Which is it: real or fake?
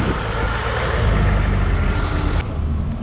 real